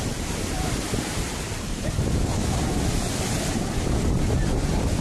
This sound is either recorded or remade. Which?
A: recorded